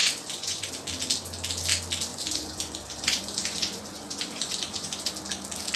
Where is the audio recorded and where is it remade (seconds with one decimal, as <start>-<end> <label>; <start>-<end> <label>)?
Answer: 0.0-0.7 remade; 0.7-2.1 recorded; 2.1-5.1 remade; 5.1-5.8 recorded